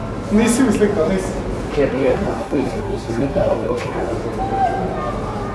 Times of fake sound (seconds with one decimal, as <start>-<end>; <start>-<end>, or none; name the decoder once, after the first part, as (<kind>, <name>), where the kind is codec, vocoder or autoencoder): 1.9-4.1 (codec, SNAC)